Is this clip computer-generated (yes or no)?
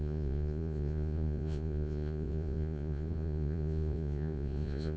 yes